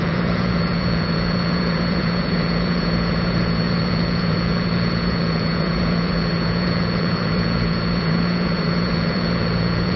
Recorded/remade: remade